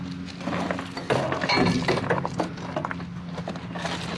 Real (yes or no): yes